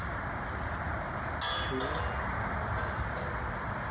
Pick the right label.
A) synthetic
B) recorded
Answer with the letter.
B